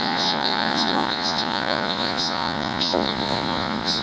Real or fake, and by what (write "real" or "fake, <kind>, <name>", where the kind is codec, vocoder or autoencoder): fake, vocoder, Vocos